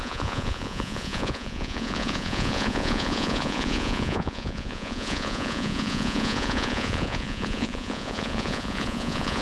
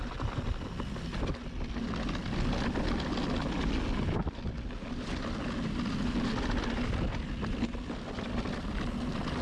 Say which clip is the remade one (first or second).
first